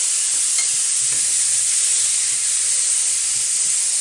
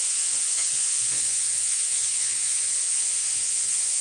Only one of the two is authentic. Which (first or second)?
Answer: first